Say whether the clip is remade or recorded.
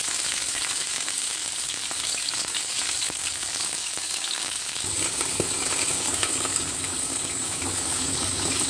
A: remade